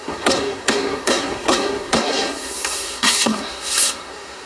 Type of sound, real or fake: fake